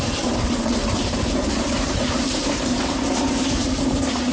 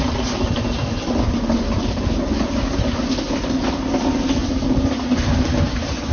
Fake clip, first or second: first